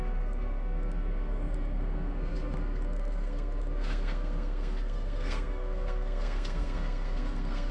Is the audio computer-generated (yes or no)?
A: yes